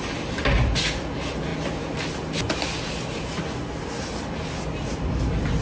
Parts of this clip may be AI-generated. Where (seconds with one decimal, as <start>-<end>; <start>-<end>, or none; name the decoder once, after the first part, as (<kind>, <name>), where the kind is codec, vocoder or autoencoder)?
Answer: none

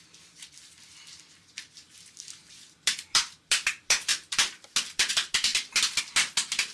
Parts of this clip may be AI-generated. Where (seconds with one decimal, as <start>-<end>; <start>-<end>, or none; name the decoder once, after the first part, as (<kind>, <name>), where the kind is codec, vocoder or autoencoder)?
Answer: 0.0-5.5 (vocoder, BigVGAN v2); 6.0-6.7

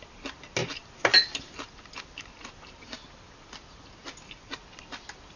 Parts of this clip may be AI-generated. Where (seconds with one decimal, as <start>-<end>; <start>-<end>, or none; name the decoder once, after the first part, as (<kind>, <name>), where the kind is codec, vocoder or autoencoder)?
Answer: none

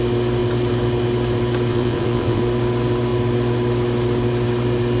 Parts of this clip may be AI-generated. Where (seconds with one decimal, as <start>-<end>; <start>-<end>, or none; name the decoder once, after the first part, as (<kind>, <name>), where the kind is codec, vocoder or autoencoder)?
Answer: 1.7-2.4 (vocoder, WaveNeXt)

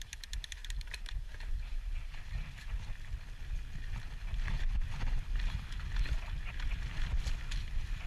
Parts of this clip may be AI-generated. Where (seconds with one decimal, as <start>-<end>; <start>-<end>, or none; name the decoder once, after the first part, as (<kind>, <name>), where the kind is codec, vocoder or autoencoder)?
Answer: 0.6-2.2 (vocoder, BigVGAN v2)

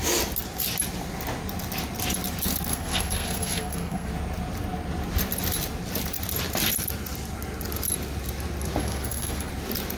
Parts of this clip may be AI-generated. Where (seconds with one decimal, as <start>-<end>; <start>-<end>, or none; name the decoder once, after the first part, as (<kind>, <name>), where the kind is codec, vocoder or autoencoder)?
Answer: 2.7-4.1 (codec, SNAC); 8.8-9.5

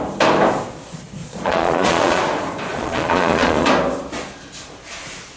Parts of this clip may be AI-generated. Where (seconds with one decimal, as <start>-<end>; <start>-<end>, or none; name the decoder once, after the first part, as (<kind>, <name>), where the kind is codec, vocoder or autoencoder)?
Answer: 1.2-2.2 (vocoder, Vocos); 2.7-3.7

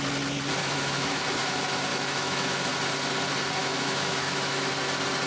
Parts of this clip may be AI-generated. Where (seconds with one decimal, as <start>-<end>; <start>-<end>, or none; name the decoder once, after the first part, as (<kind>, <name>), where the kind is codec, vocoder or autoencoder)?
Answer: 0.6-1.2 (autoencoder, DAC-VAE); 1.9-2.7; 3.6-4.7